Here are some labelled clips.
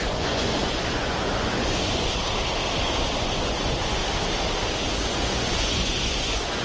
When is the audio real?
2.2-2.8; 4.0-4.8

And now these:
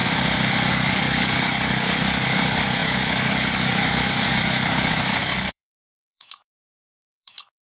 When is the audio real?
0.0-0.7

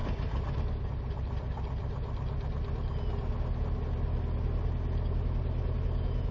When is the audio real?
0.0-6.3